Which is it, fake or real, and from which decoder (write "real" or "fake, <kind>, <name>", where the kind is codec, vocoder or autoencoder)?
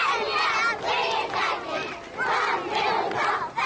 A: real